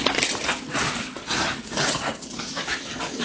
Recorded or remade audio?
remade